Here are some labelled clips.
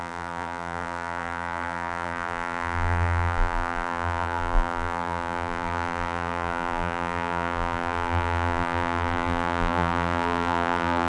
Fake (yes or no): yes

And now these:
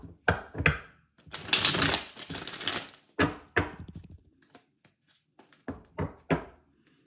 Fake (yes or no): no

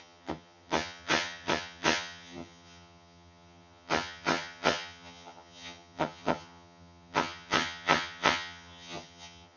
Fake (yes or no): yes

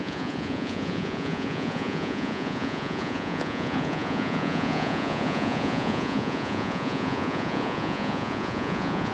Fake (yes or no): yes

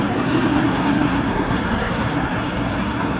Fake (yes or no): yes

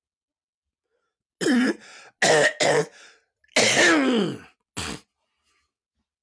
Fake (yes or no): no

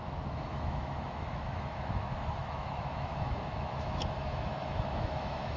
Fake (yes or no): yes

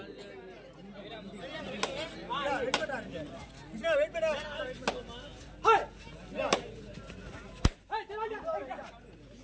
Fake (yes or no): no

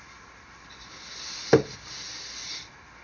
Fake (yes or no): no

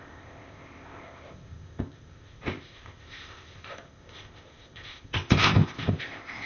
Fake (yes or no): yes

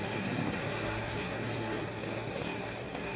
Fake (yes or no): yes